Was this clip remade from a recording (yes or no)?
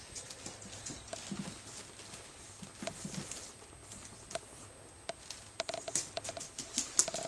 no